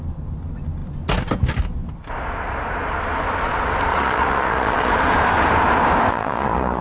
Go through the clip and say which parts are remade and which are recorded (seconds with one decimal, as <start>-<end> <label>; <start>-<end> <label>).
0.0-3.9 recorded; 3.9-4.9 remade; 4.9-6.1 recorded; 6.1-6.8 remade